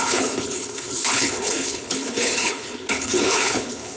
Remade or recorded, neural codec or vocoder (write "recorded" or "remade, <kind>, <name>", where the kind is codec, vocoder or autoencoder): remade, codec, HILCodec